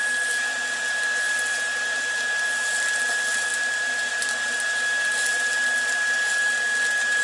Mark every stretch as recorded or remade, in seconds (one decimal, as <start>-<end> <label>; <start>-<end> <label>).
0.0-7.2 recorded